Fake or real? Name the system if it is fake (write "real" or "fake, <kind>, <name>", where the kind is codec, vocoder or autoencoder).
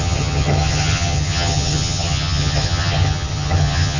fake, vocoder, HiFi-GAN